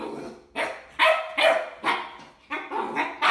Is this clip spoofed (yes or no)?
no